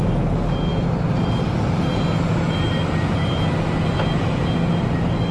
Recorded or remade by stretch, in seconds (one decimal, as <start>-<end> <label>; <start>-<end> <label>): 0.0-5.3 recorded